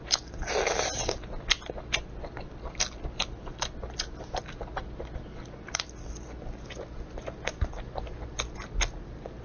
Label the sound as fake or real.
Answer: real